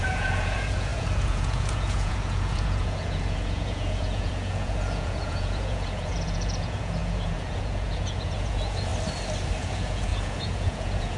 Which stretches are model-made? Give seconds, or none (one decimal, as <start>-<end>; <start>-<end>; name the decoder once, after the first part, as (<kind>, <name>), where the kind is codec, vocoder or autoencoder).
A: 0.0-8.9 (vocoder, Vocos); 9.6-11.2

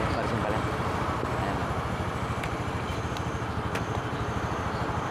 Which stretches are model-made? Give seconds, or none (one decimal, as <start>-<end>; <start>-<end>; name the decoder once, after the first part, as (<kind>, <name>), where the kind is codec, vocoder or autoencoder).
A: 1.6-5.1 (vocoder, BigVGAN v2)